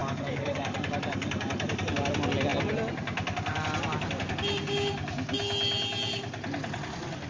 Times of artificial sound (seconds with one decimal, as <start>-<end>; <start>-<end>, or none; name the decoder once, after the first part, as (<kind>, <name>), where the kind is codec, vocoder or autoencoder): 0.0-1.9 (codec, DAC)